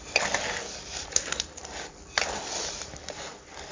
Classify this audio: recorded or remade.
remade